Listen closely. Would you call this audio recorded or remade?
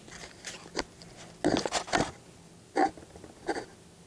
recorded